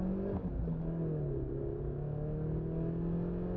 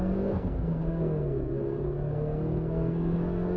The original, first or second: first